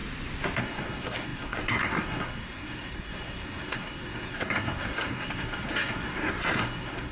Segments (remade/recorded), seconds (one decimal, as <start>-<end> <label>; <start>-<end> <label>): 0.0-0.6 recorded; 0.6-7.1 remade